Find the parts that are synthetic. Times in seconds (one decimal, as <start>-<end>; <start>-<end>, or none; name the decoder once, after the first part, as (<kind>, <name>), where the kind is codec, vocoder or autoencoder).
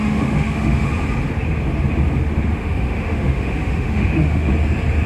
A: 0.0-0.9 (autoencoder, DAC-VAE); 2.6-4.5